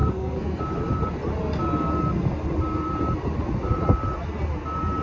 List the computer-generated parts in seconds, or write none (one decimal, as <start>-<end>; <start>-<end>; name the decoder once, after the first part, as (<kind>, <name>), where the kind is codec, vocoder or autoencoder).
0.0-0.6 (codec, SNAC)